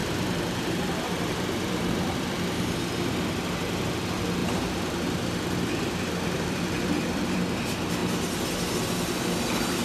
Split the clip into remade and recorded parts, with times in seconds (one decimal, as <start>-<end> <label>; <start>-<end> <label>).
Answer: 0.0-1.9 remade; 1.9-4.4 recorded; 4.4-6.9 remade; 6.9-9.8 recorded